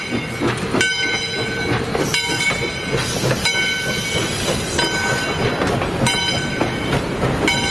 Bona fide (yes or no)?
yes